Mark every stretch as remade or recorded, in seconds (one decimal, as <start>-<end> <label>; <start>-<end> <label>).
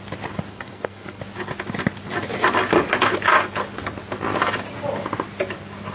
0.0-0.5 recorded; 0.5-1.2 remade; 1.2-5.9 recorded